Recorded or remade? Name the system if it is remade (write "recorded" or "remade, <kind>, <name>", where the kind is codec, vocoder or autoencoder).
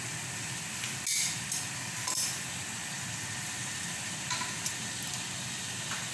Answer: recorded